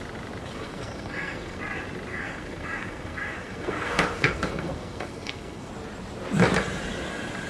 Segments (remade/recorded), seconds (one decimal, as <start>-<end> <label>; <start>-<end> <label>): 0.0-0.4 recorded; 0.4-1.6 remade; 1.6-2.1 recorded; 2.1-5.7 remade; 5.7-7.5 recorded